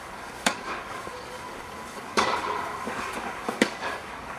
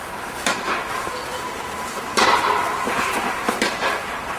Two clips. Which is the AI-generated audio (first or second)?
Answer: first